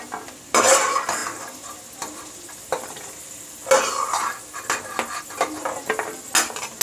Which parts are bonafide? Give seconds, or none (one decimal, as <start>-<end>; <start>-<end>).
0.0-6.8